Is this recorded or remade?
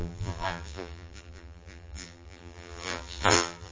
remade